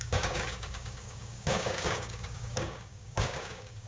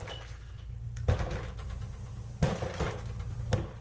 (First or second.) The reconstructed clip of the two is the first